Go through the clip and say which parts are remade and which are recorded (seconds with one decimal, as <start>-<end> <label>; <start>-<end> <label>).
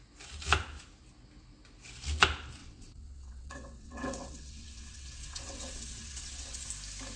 0.0-2.6 recorded; 2.6-6.7 remade; 6.7-7.2 recorded